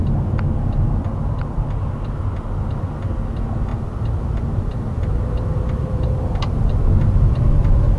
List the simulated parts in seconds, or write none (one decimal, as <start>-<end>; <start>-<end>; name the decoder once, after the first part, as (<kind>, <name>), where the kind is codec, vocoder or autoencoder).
3.7-7.4 (vocoder, BigVGAN v2)